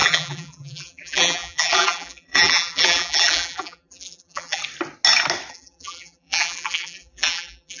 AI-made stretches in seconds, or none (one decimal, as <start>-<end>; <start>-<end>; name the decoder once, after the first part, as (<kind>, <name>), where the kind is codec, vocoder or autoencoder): 0.0-4.6 (vocoder, BigVGAN v2); 5.5-7.8